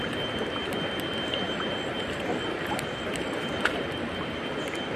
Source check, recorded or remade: recorded